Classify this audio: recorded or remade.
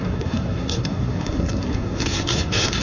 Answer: remade